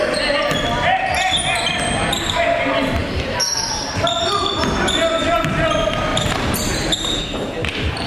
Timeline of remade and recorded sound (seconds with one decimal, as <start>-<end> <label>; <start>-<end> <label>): 0.0-3.0 recorded; 3.0-4.4 remade; 4.4-6.1 recorded; 6.1-7.2 remade; 7.2-8.1 recorded